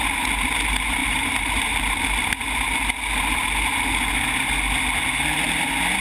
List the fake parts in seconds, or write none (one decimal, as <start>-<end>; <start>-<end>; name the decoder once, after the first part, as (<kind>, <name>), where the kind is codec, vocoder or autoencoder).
1.0-2.3 (vocoder, BigVGAN v2)